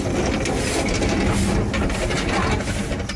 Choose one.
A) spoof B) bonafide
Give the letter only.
B